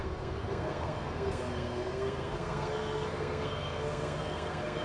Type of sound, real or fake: fake